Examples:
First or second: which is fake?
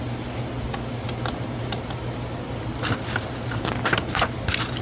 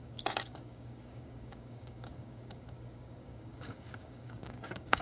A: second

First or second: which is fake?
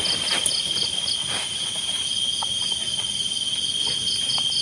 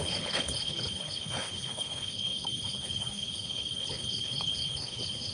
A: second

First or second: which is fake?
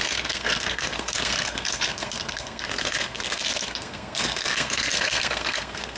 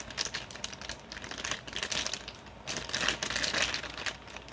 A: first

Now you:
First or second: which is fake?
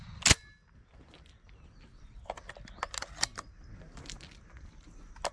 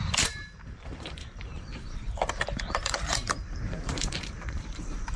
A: second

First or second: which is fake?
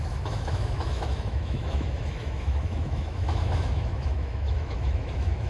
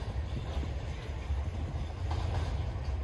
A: first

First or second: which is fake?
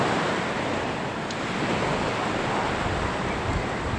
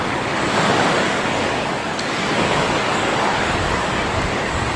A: second